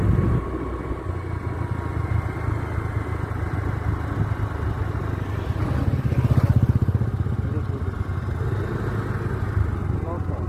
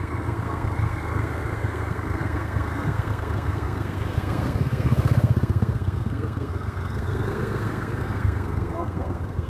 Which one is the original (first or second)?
first